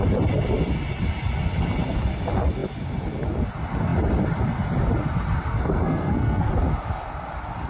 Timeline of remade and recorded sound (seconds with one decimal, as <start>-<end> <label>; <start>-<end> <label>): 0.0-5.5 recorded; 5.5-6.5 remade; 6.5-7.7 recorded